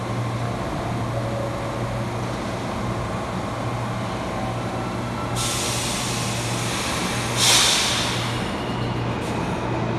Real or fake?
real